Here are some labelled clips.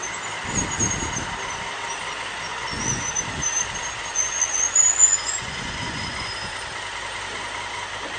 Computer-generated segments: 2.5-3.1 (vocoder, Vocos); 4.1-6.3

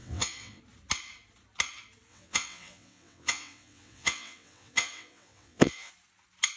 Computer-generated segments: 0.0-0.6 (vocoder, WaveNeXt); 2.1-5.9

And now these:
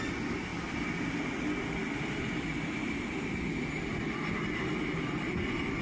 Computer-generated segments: none

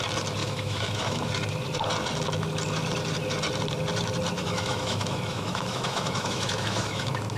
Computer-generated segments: 0.4-1.3 (autoencoder, DAC-VAE); 4.4-7.4

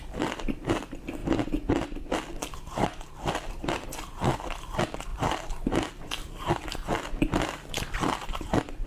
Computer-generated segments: 0.0-1.2 (vocoder, BigVGAN v2); 3.5-8.9

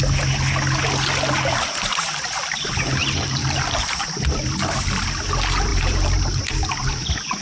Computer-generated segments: 3.0-3.6 (vocoder, BigVGAN v2); 5.7-6.4

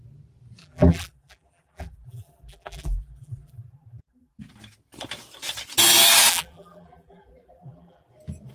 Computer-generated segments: 0.6-4.4 (vocoder, BigVGAN v2); 6.3-8.1